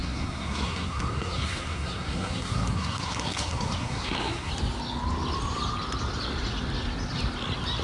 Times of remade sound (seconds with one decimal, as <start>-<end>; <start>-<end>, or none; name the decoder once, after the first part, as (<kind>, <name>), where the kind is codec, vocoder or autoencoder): 0.0-4.5 (codec, SNAC)